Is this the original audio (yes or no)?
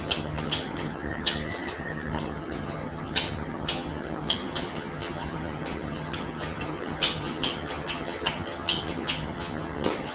no